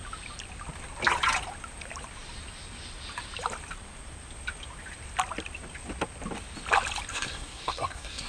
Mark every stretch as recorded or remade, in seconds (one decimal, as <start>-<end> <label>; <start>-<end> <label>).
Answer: 0.0-7.1 recorded; 7.1-8.3 remade